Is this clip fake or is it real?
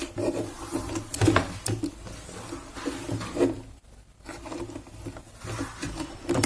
real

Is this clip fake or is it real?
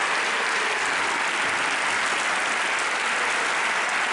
real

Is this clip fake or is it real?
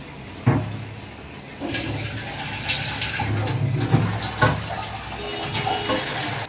real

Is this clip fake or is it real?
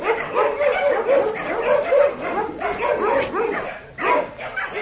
real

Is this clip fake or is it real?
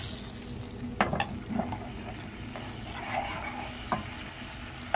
real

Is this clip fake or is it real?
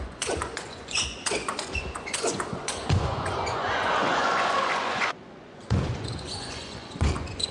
fake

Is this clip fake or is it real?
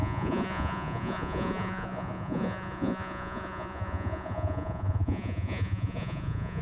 fake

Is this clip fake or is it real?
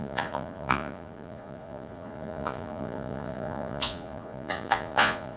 fake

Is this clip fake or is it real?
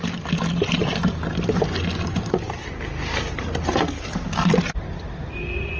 real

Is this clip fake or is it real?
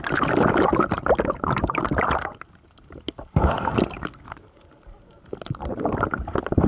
real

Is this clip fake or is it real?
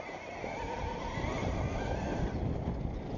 real